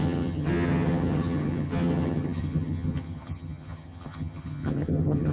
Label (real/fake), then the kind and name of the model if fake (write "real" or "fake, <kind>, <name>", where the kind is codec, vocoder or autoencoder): fake, vocoder, HiFi-GAN